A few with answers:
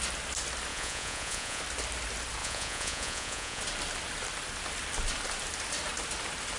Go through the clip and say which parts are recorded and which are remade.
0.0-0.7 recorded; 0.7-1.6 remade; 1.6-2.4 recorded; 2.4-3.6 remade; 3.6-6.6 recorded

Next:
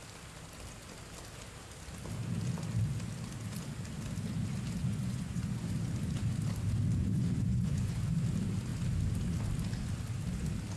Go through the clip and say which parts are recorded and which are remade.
0.0-4.8 recorded; 4.8-5.7 remade; 5.7-7.0 recorded; 7.0-8.0 remade; 8.0-10.8 recorded

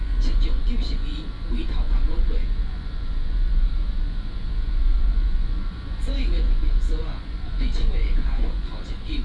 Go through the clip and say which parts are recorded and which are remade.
0.0-9.2 remade

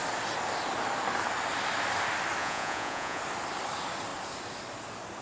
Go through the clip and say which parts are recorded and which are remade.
0.0-2.4 recorded; 2.4-3.2 remade; 3.2-5.2 recorded

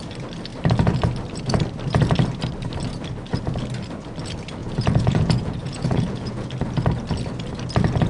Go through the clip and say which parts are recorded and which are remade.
0.0-4.6 recorded; 4.6-6.5 remade; 6.5-8.1 recorded

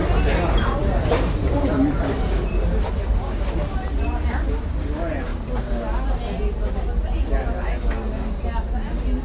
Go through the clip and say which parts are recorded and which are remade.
0.0-9.2 recorded